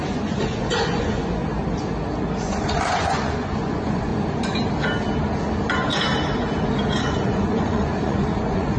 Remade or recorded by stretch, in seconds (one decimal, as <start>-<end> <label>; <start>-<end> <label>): 0.0-1.4 remade; 1.4-2.4 recorded; 2.4-4.1 remade; 4.1-7.0 recorded; 7.0-8.8 remade